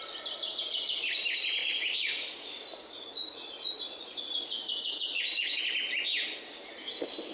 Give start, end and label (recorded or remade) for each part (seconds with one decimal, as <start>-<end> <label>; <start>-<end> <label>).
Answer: 0.0-1.6 recorded; 1.6-5.6 remade; 5.6-7.3 recorded